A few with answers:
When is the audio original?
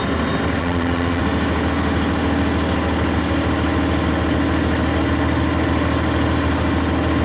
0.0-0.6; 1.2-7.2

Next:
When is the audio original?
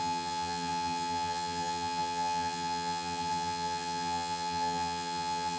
none